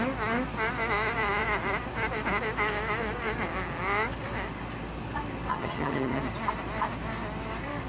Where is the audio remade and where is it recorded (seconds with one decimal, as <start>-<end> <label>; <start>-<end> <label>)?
0.0-5.5 recorded; 5.5-6.2 remade; 6.2-7.9 recorded